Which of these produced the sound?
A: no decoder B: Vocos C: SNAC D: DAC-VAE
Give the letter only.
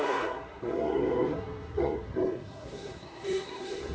C